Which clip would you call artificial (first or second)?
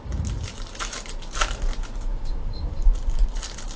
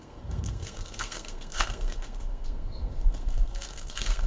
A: second